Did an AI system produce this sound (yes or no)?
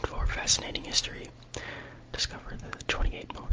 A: no